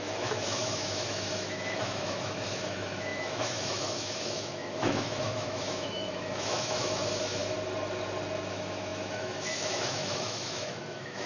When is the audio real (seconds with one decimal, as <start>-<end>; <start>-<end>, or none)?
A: 7.4-8.5